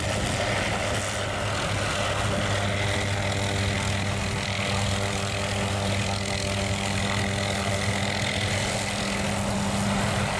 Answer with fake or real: real